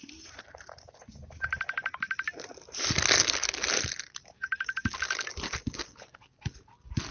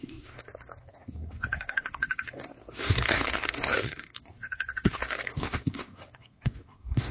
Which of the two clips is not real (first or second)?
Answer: second